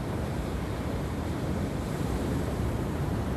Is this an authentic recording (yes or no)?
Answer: no